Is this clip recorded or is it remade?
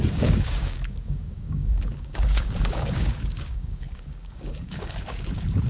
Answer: remade